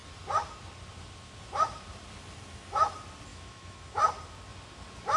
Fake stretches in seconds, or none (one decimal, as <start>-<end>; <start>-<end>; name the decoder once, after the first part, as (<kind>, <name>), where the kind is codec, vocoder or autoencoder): 3.3-3.9 (autoencoder, DAC-VAE)

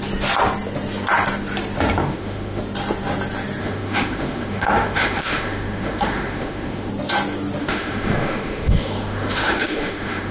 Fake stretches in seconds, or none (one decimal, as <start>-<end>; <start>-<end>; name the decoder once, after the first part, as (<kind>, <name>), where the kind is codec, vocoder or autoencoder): 2.0-2.6 (autoencoder, DAC-VAE); 3.6-6.9; 7.6-10.3